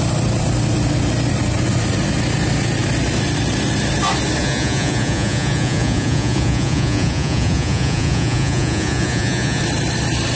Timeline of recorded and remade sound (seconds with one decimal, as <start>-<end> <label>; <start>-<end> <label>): 0.0-4.4 recorded; 4.4-9.6 remade; 9.6-10.4 recorded